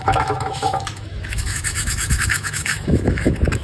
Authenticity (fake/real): fake